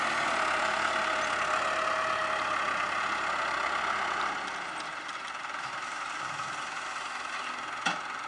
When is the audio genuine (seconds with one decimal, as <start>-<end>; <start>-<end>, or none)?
0.0-8.3